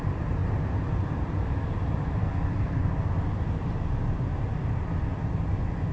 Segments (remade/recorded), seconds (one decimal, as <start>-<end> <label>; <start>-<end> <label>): 0.0-2.2 recorded; 2.2-3.1 remade; 3.1-5.9 recorded